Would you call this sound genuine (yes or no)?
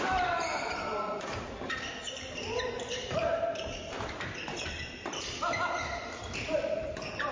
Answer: no